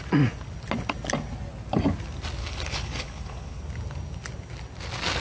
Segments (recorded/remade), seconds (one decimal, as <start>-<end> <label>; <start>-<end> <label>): 0.0-2.4 recorded; 2.4-3.6 remade; 3.6-5.2 recorded